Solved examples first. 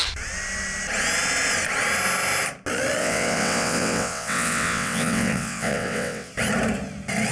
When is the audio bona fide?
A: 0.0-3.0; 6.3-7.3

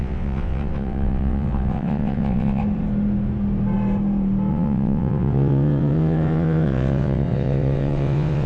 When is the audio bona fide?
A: 2.6-4.5